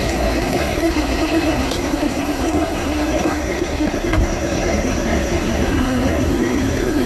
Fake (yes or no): yes